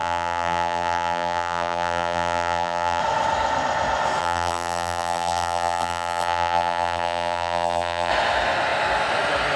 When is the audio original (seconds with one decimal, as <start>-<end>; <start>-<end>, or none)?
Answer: 3.0-4.2; 8.1-9.6

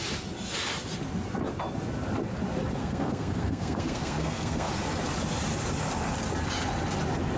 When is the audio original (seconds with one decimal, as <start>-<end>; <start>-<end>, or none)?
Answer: 0.0-2.8; 4.7-7.4

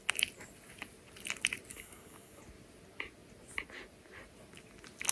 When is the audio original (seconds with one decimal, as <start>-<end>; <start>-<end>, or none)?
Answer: 0.0-1.7; 2.4-5.1

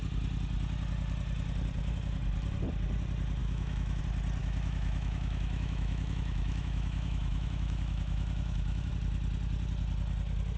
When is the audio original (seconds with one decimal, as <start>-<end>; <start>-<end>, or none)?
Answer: 0.0-3.4; 4.0-4.4; 8.9-10.6